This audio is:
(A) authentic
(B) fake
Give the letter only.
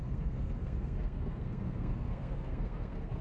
B